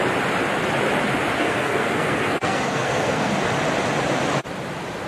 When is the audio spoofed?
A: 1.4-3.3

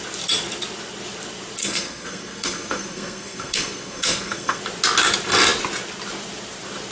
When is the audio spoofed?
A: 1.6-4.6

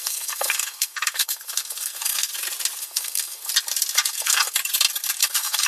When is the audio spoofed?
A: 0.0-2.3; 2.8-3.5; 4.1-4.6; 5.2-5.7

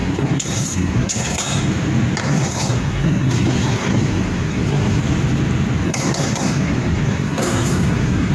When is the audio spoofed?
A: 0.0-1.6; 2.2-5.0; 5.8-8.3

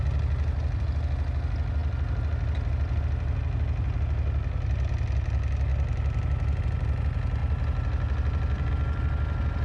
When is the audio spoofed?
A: none

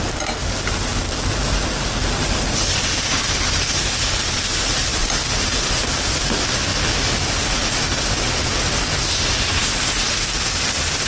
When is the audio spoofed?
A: none